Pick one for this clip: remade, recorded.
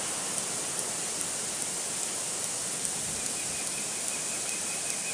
recorded